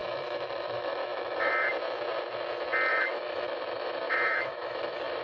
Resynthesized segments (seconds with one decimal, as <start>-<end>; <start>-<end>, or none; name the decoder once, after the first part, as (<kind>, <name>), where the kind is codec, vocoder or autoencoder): 0.0-1.5 (autoencoder, DAC-VAE); 2.9-5.2